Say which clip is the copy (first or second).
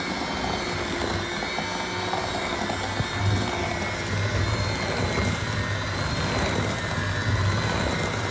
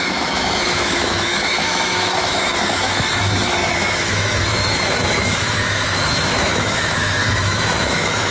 second